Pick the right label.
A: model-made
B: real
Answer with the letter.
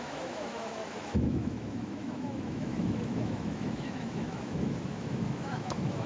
A